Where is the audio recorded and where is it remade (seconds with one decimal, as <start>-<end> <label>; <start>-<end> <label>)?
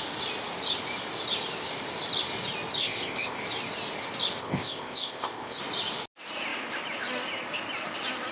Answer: 0.0-2.8 recorded; 2.8-3.4 remade; 3.4-4.4 recorded; 4.4-5.6 remade; 5.6-8.3 recorded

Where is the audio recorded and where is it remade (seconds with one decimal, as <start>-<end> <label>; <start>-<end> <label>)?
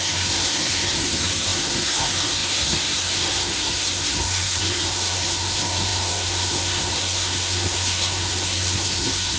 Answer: 0.0-9.4 remade